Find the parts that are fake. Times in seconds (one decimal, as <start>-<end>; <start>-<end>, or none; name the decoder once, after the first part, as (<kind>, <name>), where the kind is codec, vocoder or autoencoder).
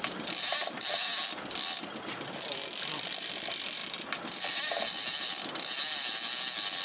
none